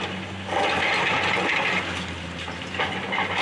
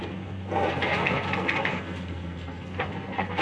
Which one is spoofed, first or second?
second